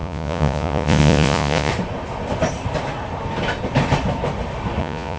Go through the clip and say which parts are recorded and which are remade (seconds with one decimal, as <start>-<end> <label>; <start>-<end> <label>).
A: 0.0-1.7 remade; 1.7-4.8 recorded; 4.8-5.2 remade